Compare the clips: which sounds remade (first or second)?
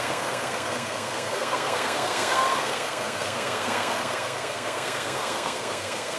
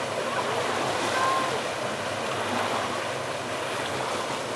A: first